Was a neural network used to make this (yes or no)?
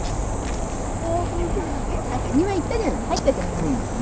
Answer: no